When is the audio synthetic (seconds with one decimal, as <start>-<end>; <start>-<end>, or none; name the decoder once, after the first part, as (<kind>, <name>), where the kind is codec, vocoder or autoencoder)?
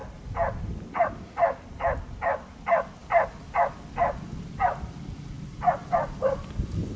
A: none